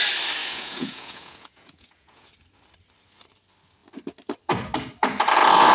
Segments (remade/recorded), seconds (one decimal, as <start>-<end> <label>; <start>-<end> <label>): 0.0-0.4 recorded; 0.4-2.3 remade; 2.3-5.7 recorded